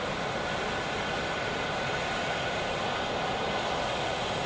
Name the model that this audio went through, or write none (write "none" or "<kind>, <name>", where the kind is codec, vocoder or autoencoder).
none